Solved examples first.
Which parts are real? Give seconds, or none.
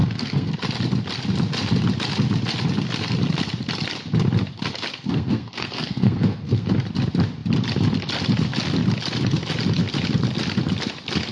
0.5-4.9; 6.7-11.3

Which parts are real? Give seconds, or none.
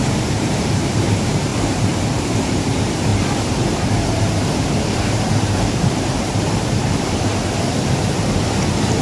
1.5-2.1; 3.1-4.6; 7.3-9.0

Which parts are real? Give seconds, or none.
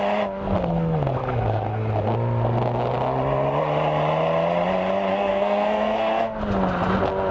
0.0-5.1; 6.4-7.3